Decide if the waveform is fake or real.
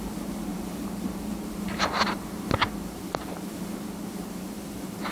fake